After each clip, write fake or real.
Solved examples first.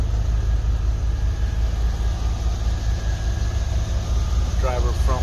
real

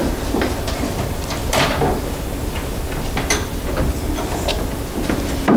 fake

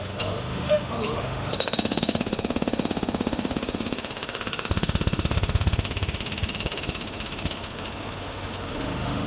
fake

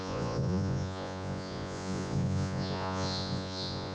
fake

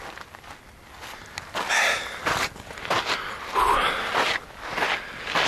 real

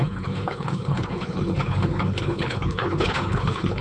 fake